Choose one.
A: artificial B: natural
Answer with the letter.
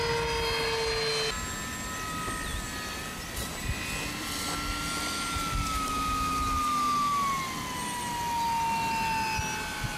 B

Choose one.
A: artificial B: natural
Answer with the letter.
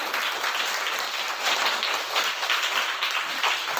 A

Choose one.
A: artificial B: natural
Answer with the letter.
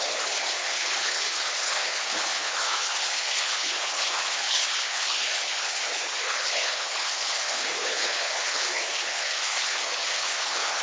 A